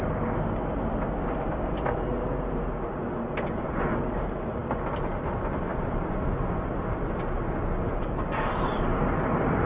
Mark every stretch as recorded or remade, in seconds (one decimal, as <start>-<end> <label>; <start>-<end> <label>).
0.0-0.7 recorded; 0.7-2.1 remade; 2.1-4.6 recorded; 4.6-9.7 remade